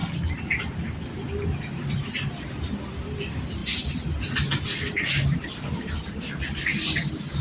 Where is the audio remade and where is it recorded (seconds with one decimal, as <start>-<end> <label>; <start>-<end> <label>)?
0.0-7.4 recorded